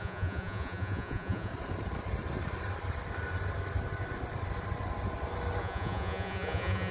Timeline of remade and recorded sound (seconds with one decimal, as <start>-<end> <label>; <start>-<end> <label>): 0.0-1.5 remade; 1.5-5.6 recorded; 5.6-6.9 remade